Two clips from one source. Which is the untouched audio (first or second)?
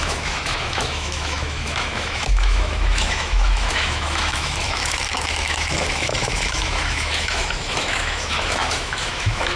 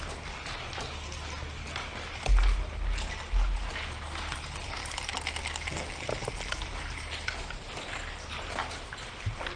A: second